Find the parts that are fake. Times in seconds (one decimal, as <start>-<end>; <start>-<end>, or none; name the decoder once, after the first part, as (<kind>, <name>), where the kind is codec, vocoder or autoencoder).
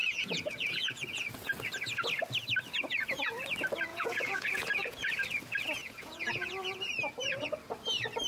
0.0-1.3 (vocoder, Vocos); 3.9-5.1; 5.8-6.5